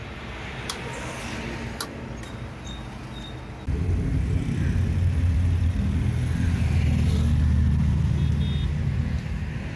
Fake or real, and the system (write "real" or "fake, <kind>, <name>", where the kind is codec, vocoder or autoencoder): real